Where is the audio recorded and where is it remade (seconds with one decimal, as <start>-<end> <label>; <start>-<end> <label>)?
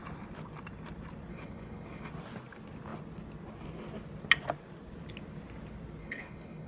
0.0-1.3 recorded; 1.3-2.1 remade; 2.1-6.0 recorded; 6.0-6.7 remade